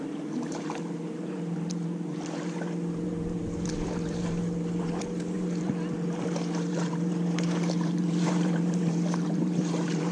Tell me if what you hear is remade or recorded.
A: remade